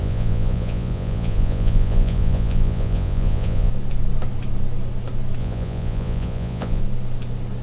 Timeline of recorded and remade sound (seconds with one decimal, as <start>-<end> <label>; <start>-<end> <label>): 0.0-3.7 remade; 3.7-5.4 recorded; 5.4-6.8 remade; 6.8-7.6 recorded